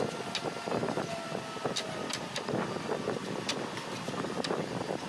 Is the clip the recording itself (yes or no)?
yes